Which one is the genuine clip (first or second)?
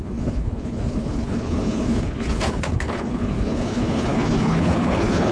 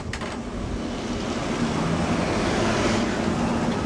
second